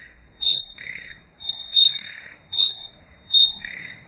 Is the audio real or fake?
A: fake